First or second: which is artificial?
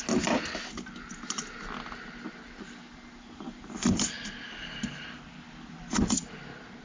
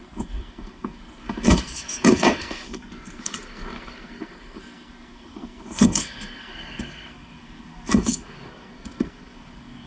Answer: second